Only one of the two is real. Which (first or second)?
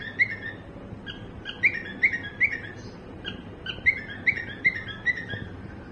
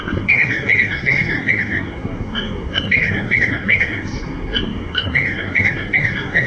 first